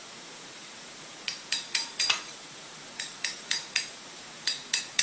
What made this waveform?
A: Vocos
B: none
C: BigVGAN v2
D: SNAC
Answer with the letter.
A